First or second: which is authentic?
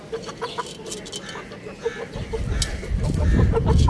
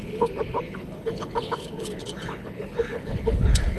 first